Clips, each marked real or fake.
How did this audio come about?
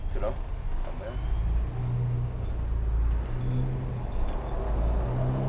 real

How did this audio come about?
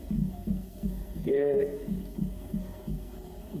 fake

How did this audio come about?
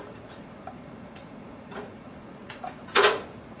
fake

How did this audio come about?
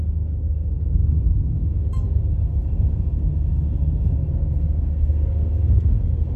fake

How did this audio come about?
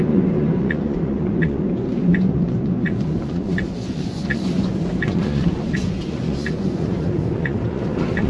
fake